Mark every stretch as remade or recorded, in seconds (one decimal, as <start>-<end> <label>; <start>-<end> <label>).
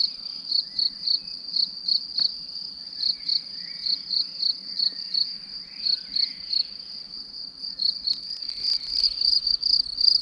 0.0-3.7 recorded; 3.7-4.4 remade; 4.4-10.2 recorded